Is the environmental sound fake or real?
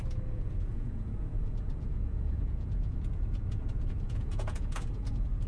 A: fake